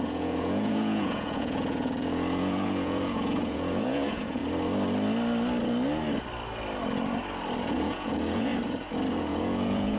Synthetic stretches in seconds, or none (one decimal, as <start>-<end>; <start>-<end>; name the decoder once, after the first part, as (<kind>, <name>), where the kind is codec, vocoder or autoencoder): 0.0-4.4 (vocoder, Vocos); 7.6-8.5; 9.1-10.0